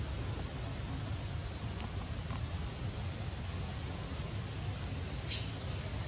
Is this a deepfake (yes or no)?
no